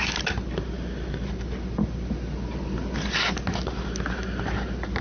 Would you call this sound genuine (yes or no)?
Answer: yes